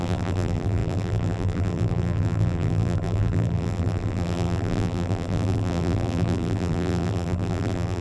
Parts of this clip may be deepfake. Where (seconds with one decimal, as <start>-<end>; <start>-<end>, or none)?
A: 0.0-8.0